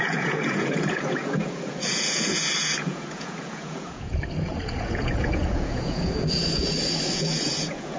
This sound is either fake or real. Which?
fake